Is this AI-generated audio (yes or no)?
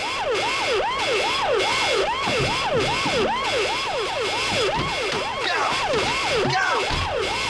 no